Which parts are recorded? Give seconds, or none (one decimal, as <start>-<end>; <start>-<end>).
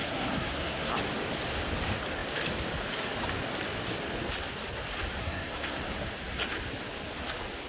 0.9-5.2; 5.8-7.7